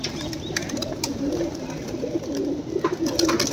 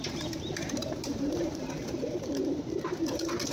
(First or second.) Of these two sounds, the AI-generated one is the second